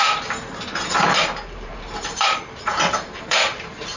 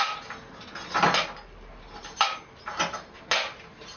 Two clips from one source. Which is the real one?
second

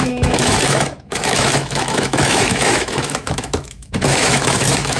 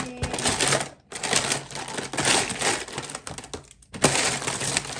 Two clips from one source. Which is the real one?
second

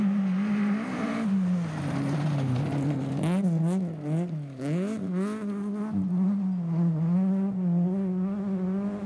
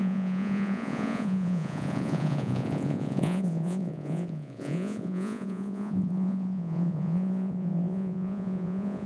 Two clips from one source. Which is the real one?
first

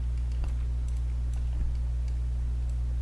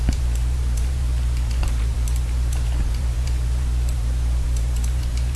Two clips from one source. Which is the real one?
first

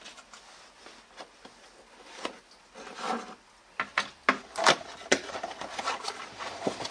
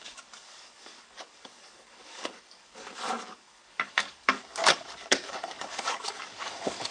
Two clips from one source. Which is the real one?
first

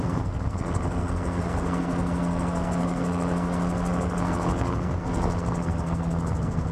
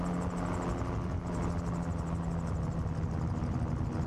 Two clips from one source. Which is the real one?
second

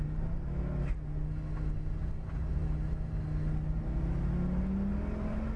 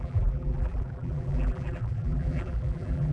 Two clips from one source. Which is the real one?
first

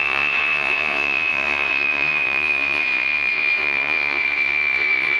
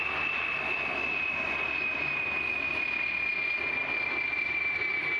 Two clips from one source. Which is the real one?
second